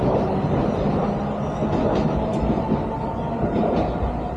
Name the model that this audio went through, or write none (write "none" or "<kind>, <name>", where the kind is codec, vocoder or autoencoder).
none